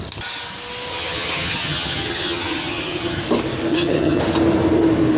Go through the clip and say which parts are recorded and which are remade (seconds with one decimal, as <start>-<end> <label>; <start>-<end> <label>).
0.0-0.9 recorded; 0.9-3.2 remade; 3.2-3.7 recorded; 3.7-4.2 remade; 4.2-5.2 recorded

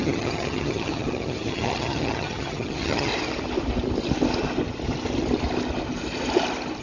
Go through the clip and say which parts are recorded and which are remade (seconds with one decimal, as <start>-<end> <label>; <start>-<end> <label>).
0.0-3.1 remade; 3.1-6.8 recorded

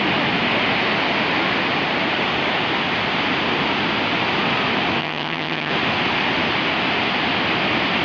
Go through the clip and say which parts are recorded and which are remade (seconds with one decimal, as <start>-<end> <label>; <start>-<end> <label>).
0.0-5.0 recorded; 5.0-5.7 remade; 5.7-8.0 recorded

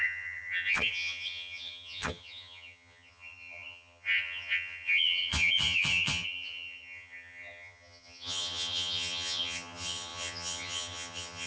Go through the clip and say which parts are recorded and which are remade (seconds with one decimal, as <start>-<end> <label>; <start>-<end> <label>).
0.0-11.5 remade

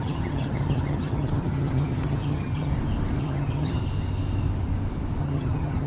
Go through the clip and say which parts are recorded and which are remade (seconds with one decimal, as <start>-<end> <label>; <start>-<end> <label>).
0.0-2.7 remade; 2.7-3.2 recorded; 3.2-3.8 remade; 3.8-5.2 recorded; 5.2-5.9 remade

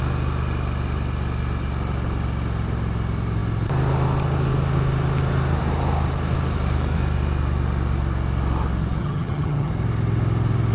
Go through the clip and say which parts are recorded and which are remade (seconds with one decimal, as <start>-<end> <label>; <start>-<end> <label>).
0.0-9.0 recorded; 9.0-9.7 remade; 9.7-10.7 recorded

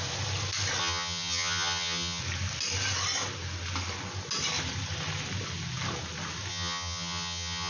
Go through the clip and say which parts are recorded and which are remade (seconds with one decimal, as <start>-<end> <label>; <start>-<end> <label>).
0.0-0.8 recorded; 0.8-2.2 remade; 2.2-6.5 recorded; 6.5-7.7 remade

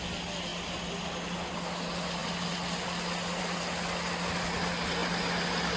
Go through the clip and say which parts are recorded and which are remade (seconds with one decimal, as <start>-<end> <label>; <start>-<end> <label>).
0.0-5.8 recorded